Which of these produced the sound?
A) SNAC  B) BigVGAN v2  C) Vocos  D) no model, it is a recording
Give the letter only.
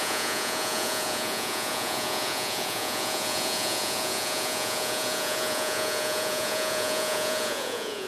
C